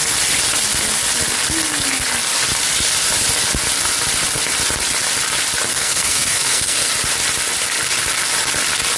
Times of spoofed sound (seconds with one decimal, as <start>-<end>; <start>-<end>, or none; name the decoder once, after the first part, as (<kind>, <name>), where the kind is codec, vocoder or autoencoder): 5.7-6.9 (codec, SNAC)